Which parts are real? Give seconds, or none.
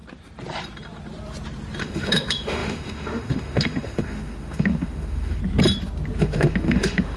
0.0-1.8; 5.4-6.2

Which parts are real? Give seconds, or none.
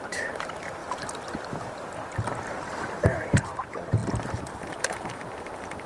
0.8-3.3; 4.0-4.7